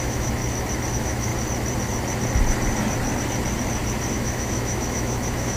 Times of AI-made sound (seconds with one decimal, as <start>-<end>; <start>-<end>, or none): 0.0-0.4; 0.9-1.3; 4.1-5.6